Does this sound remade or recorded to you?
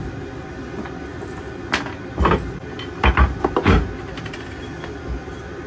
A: recorded